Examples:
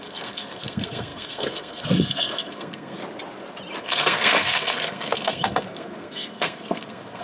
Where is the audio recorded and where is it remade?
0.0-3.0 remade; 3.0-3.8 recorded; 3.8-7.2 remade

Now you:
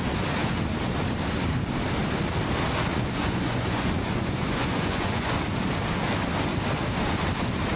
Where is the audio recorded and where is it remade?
0.0-2.9 recorded; 2.9-5.4 remade; 5.4-7.8 recorded